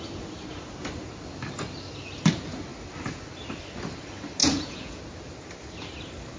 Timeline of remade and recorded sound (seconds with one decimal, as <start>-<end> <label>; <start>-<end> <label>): 0.0-4.4 recorded; 4.4-5.0 remade; 5.0-6.4 recorded